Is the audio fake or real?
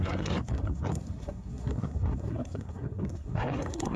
fake